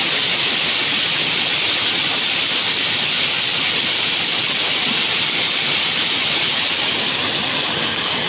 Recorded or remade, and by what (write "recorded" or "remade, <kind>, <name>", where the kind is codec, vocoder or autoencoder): recorded